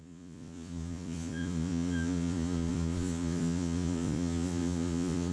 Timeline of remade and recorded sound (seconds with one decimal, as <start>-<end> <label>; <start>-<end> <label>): 0.0-5.3 remade